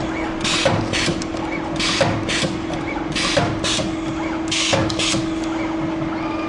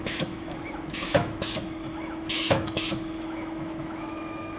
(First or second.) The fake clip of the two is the second